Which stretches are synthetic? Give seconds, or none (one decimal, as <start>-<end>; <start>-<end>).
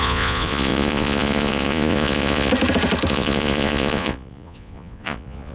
0.0-2.5; 3.1-5.5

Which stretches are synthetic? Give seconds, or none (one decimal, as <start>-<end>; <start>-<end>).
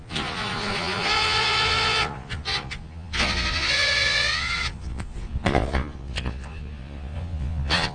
0.0-7.9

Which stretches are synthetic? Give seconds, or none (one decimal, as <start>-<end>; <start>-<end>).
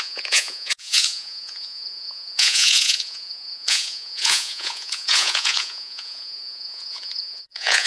0.0-7.9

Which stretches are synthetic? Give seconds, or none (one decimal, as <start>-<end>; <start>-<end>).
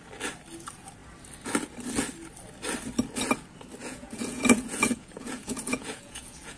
3.8-6.6